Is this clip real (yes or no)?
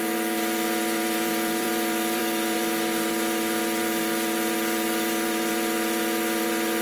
no